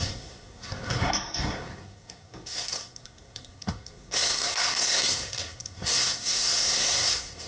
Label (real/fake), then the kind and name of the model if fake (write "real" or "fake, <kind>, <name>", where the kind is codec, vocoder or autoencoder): fake, codec, SNAC